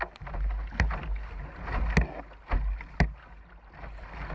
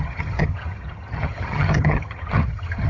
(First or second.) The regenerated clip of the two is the second